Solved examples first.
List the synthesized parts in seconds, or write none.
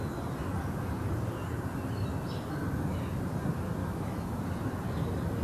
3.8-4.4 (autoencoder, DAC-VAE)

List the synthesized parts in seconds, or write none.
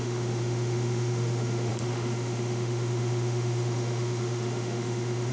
0.0-5.3 (autoencoder, DAC-VAE)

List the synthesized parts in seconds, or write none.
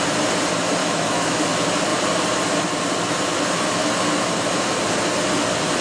0.8-1.4 (autoencoder, DAC-VAE)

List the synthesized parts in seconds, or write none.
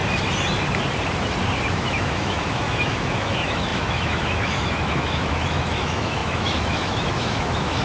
1.7-7.8 (autoencoder, DAC-VAE)